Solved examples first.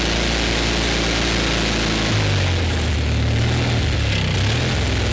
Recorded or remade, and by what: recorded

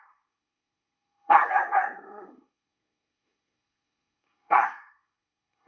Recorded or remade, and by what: remade, codec, SNAC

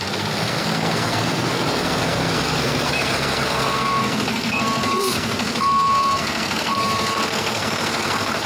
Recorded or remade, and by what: remade, codec, SNAC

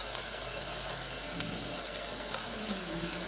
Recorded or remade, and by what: remade, codec, SNAC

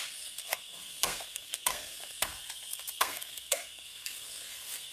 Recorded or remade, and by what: remade, codec, SNAC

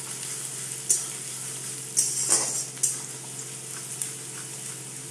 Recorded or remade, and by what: recorded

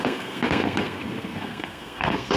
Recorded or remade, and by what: remade, codec, SNAC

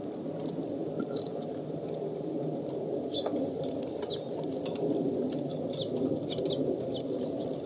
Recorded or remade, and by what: recorded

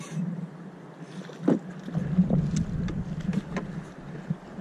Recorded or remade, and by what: recorded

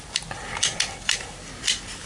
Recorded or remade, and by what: recorded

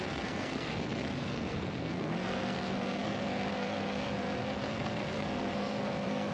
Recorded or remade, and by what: remade, codec, SNAC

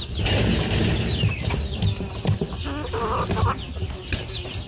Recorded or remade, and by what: recorded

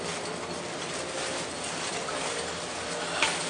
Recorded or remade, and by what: recorded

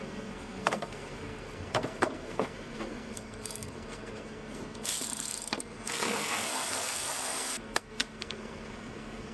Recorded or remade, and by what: remade, codec, SNAC